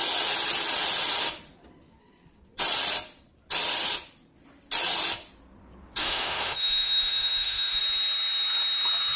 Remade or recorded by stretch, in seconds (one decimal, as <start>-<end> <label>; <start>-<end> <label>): 0.0-6.0 recorded; 6.0-7.8 remade; 7.8-9.2 recorded